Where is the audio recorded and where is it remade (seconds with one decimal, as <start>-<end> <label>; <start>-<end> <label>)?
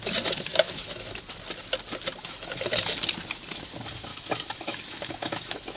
0.0-0.5 recorded; 0.5-1.2 remade; 1.2-2.2 recorded; 2.2-2.9 remade; 2.9-4.1 recorded; 4.1-5.8 remade